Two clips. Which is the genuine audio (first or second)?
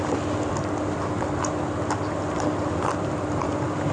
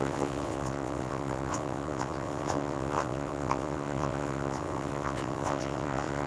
first